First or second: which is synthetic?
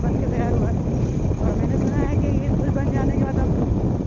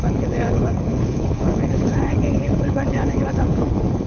second